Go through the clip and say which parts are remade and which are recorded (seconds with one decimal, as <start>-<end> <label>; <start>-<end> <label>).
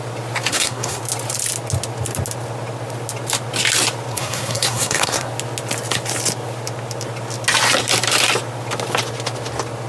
0.0-0.5 recorded; 0.5-1.0 remade; 1.0-4.1 recorded; 4.1-5.3 remade; 5.3-9.9 recorded